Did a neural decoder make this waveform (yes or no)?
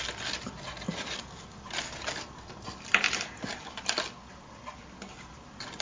no